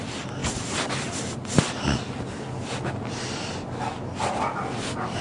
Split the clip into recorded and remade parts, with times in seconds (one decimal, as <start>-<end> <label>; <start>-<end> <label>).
0.0-5.2 recorded